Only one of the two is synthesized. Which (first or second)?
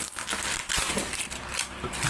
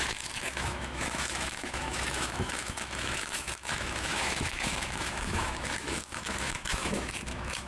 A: second